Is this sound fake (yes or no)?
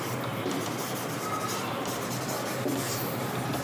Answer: no